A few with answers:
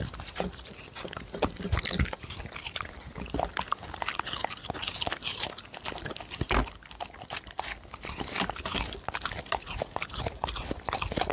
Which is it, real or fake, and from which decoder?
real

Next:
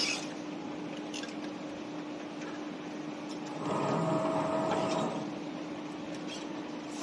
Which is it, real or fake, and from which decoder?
real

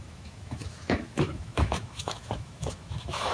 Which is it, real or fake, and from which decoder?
fake, autoencoder, DAC-VAE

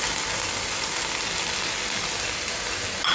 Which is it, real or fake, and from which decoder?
real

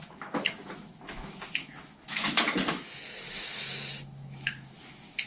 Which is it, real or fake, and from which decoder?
fake, autoencoder, DAC-VAE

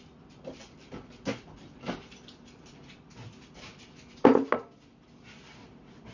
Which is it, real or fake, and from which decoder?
real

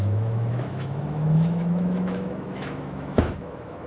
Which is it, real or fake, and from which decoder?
fake, autoencoder, DAC-VAE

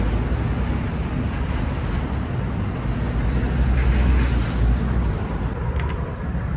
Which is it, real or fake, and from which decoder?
real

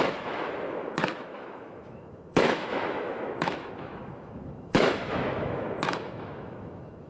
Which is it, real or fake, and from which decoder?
fake, autoencoder, DAC-VAE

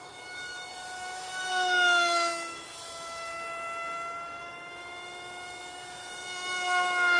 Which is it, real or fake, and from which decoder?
fake, autoencoder, DAC-VAE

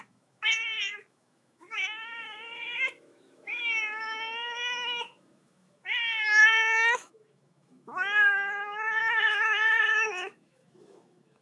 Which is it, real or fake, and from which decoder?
fake, autoencoder, DAC-VAE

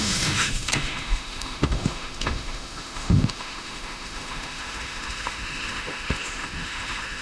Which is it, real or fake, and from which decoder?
fake, autoencoder, DAC-VAE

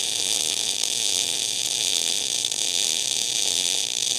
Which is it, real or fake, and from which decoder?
real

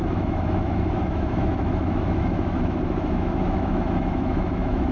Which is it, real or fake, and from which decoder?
fake, autoencoder, DAC-VAE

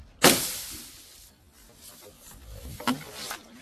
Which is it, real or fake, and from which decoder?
real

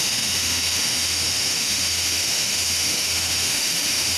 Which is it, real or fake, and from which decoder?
fake, autoencoder, DAC-VAE